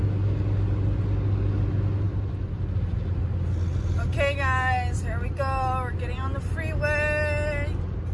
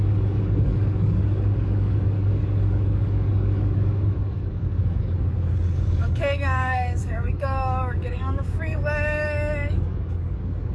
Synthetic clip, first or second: second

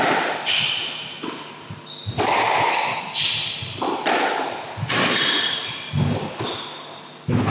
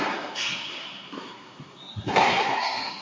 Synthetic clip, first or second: second